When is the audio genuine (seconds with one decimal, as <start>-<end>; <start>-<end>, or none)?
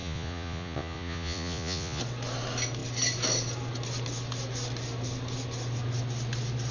2.0-6.7